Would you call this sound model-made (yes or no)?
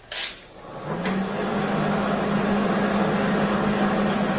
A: no